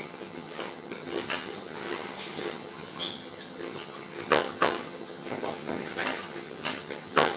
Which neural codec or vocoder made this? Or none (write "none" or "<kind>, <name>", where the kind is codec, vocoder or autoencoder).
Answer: vocoder, HiFi-GAN